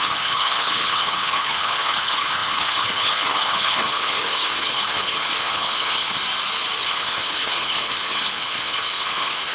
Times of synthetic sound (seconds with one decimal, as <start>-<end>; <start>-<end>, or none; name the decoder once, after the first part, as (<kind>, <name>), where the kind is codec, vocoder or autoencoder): 0.0-6.2 (codec, HILCodec); 6.8-9.5